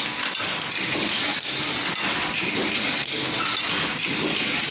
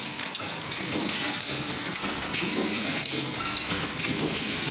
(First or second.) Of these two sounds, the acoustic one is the first